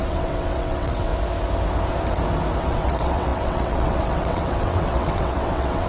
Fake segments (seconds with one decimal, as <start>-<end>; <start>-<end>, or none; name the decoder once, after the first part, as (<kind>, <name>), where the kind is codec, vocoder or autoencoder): 0.0-1.1 (vocoder, WaveNeXt); 2.6-5.9